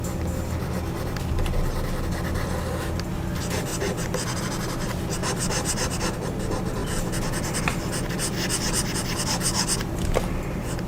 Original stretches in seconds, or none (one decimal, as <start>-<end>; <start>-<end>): 0.0-10.9

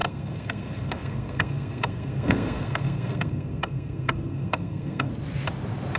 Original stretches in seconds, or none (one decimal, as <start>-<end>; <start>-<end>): 5.1-6.0